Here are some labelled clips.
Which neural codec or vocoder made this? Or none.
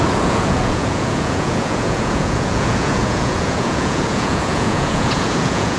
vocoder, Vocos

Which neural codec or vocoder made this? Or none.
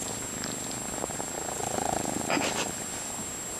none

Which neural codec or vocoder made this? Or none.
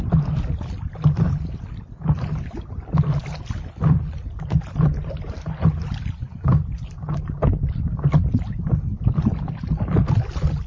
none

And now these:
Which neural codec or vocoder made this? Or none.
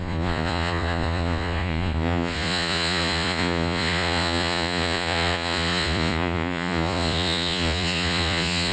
vocoder, Vocos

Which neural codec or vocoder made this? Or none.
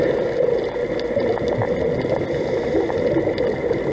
none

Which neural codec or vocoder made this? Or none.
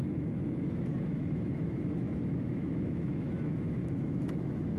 autoencoder, DAC-VAE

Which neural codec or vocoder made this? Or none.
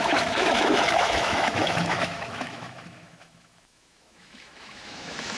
autoencoder, DAC-VAE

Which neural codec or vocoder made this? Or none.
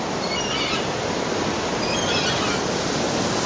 none